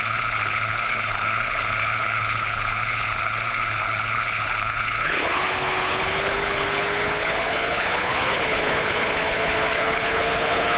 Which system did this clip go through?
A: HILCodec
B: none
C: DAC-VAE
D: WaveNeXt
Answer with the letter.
A